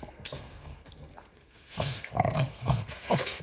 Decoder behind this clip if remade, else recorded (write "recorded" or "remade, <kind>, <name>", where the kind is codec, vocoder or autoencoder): remade, codec, SNAC